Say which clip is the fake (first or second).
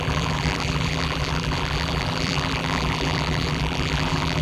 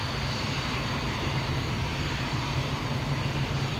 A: first